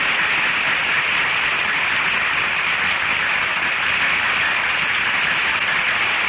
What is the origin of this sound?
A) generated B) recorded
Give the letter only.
B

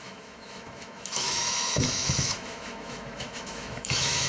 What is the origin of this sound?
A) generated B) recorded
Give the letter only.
A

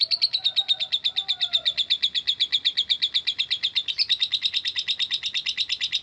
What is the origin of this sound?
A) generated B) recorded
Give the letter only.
B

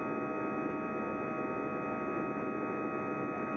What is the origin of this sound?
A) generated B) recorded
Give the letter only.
B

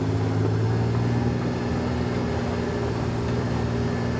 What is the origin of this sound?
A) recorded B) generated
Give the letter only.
A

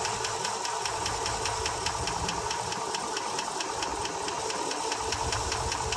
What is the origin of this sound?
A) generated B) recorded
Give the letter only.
B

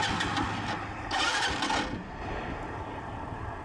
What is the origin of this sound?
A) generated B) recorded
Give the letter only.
B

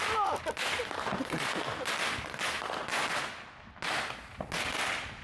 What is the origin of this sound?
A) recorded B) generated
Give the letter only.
A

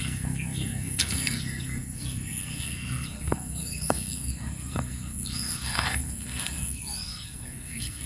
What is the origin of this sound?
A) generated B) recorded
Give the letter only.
A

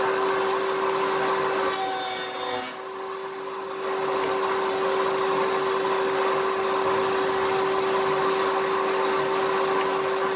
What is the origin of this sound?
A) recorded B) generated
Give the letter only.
A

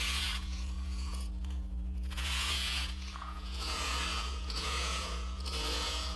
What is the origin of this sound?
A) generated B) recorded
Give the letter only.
A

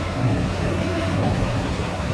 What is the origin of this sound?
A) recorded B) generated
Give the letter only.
B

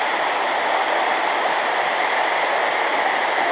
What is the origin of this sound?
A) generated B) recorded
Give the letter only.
B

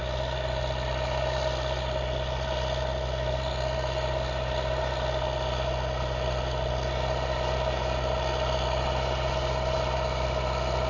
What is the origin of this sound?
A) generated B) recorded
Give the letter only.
B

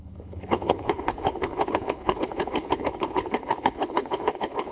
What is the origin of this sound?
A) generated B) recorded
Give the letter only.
A